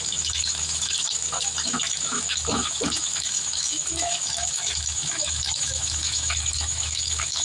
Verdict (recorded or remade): remade